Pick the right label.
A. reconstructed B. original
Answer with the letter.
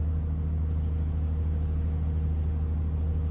B